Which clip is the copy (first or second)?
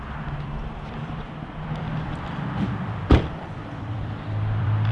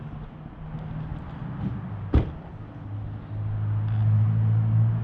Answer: first